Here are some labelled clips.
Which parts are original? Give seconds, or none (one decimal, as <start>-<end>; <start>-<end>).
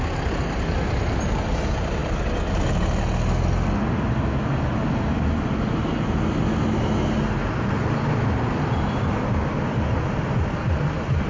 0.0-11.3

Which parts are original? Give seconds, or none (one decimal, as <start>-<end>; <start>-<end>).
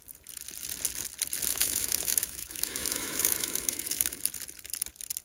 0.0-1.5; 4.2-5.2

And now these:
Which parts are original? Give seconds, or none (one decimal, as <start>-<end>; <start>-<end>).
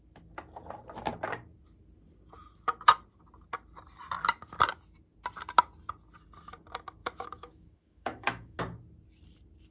0.0-7.0; 8.6-9.7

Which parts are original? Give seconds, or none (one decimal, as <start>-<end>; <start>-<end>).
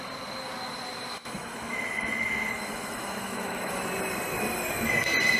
0.0-1.1; 3.8-5.4